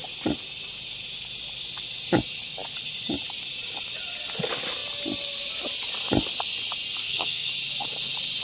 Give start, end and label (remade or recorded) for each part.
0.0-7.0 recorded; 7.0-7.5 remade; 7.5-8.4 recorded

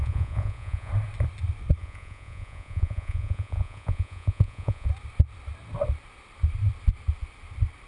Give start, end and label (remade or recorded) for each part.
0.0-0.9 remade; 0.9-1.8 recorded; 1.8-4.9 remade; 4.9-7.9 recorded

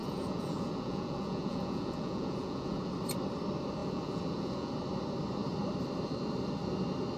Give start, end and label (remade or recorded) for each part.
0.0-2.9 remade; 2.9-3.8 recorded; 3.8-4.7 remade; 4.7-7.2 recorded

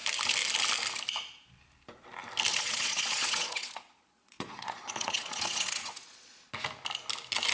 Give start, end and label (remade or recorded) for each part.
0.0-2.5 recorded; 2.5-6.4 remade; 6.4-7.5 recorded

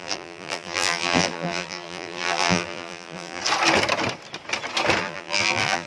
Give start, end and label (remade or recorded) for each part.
0.0-3.4 remade; 3.4-5.0 recorded; 5.0-5.9 remade

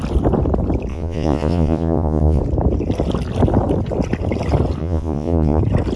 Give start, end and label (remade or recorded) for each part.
0.0-0.9 recorded; 0.9-2.4 remade; 2.4-4.8 recorded; 4.8-5.6 remade; 5.6-6.0 recorded